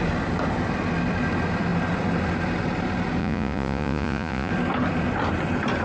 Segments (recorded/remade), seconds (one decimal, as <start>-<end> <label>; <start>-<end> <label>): 0.0-3.2 recorded; 3.2-4.5 remade; 4.5-5.8 recorded